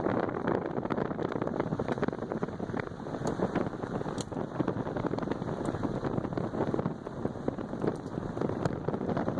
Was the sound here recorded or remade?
remade